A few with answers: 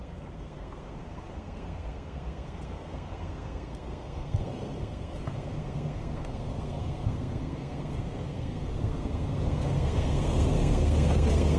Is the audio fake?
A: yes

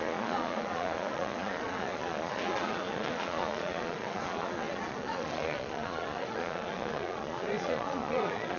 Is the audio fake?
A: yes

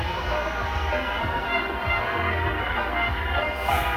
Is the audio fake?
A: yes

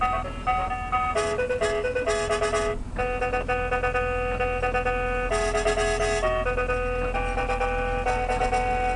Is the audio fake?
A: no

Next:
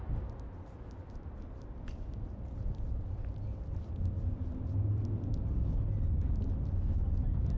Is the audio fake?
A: no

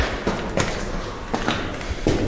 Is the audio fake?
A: no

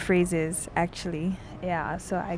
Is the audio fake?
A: no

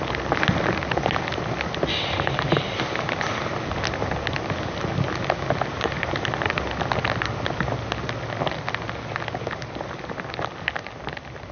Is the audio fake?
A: no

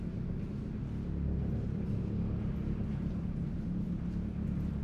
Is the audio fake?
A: no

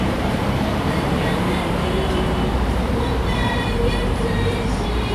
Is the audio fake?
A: yes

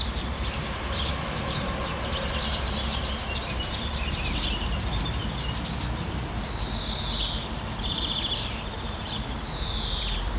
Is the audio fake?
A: yes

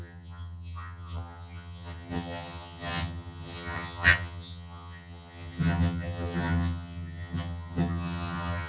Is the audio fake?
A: yes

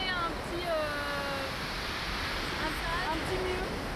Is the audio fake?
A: no